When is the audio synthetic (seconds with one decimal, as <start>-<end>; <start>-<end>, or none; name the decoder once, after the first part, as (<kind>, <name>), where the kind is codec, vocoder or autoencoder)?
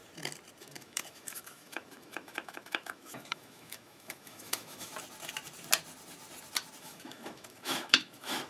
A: 0.6-4.9 (autoencoder, DAC-VAE); 6.8-8.5